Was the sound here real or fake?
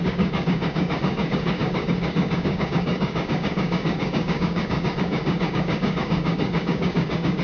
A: fake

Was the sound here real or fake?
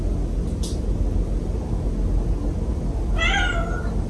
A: real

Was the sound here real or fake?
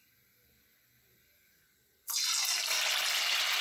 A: real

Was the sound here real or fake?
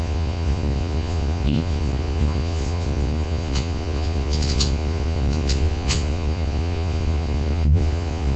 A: fake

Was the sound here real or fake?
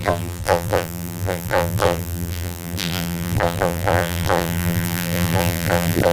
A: fake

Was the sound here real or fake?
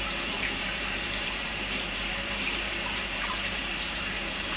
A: fake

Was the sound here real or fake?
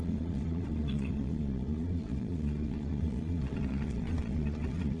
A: fake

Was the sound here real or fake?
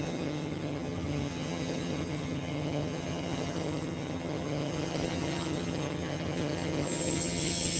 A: fake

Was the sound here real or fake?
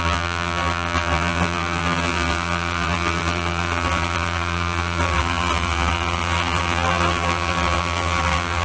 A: fake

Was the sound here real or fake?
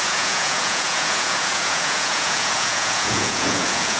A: fake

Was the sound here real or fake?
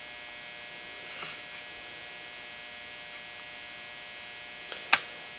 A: real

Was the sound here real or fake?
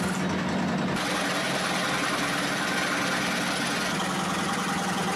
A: real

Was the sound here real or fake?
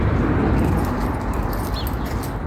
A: real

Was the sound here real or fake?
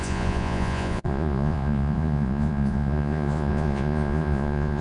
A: fake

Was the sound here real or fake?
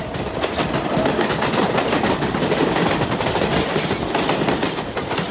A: fake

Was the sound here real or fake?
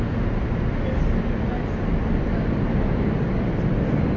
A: real